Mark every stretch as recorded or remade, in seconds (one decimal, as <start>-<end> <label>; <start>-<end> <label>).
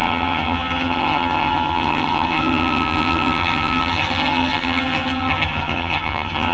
0.0-6.5 remade